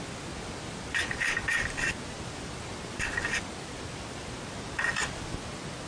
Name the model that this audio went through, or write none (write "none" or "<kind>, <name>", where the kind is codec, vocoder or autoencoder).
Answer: none